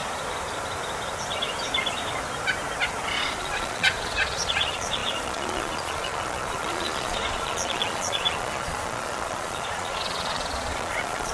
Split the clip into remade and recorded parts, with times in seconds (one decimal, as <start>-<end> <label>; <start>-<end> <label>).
0.0-3.4 recorded; 3.4-11.3 remade